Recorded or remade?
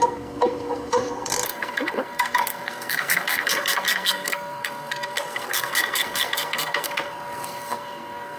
remade